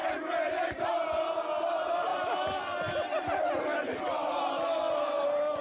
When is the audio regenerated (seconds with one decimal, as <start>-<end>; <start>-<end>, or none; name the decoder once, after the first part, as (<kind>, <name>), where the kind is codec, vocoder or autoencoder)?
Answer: 0.0-0.9 (vocoder, BigVGAN v2); 2.1-4.3